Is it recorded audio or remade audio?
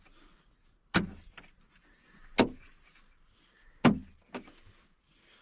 recorded